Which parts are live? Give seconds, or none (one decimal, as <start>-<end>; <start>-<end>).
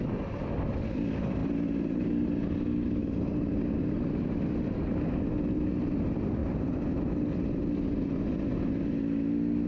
0.0-9.7